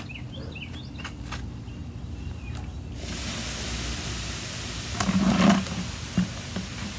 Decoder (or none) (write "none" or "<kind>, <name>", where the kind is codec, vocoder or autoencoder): none